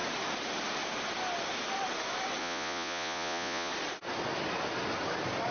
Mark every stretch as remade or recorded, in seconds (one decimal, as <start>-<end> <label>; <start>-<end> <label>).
0.0-2.4 recorded; 2.4-3.7 remade; 3.7-5.5 recorded